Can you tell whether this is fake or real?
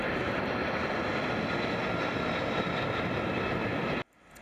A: real